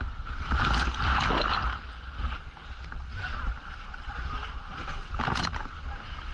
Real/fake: real